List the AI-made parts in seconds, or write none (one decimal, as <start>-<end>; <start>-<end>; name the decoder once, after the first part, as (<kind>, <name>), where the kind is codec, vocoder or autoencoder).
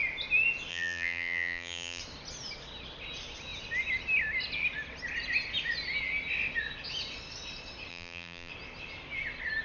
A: 0.7-2.0 (vocoder, BigVGAN v2); 7.9-8.5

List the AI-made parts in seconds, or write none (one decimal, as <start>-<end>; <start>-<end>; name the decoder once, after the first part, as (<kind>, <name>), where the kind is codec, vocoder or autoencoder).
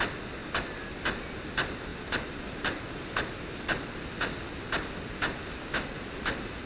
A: none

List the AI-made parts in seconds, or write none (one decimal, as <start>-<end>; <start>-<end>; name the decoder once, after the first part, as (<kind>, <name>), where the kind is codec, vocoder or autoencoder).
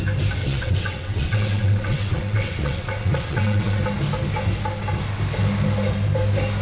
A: 0.4-3.8 (vocoder, WaveNeXt)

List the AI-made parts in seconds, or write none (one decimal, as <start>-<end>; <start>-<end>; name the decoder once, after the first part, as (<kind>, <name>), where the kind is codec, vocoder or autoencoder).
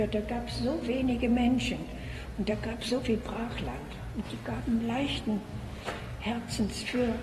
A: 1.9-3.0 (vocoder, BigVGAN v2); 5.5-6.0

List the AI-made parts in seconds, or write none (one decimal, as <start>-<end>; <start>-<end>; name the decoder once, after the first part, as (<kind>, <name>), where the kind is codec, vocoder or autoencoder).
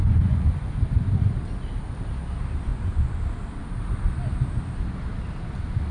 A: 0.0-0.7 (vocoder, Vocos); 2.7-3.2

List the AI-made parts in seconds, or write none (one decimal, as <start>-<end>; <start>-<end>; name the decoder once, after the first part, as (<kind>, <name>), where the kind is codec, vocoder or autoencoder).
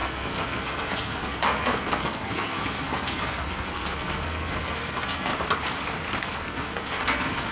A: 0.0-5.3 (codec, SNAC); 6.2-7.5